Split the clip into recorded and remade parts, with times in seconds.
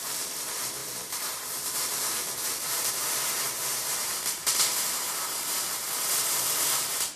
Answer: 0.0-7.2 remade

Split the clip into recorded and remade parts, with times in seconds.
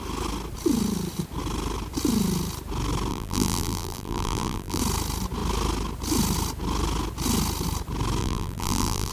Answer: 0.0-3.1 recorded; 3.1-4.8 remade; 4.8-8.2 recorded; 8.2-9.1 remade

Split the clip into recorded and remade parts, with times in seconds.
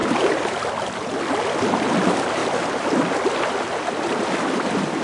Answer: 0.0-1.3 remade; 1.3-2.4 recorded; 2.4-3.1 remade; 3.1-5.0 recorded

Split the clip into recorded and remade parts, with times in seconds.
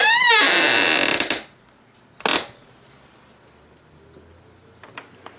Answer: 0.0-5.4 recorded